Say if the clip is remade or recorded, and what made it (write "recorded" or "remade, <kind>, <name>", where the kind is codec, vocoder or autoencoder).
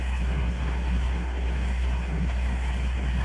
remade, codec, SNAC